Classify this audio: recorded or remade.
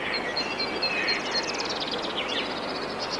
recorded